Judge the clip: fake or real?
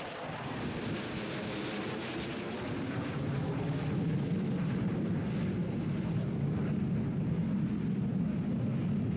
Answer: real